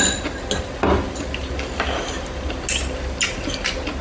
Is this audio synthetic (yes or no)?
no